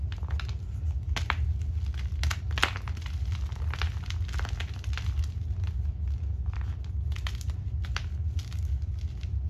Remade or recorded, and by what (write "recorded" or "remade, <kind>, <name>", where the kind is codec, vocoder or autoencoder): recorded